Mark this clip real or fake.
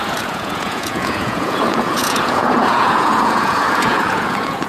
fake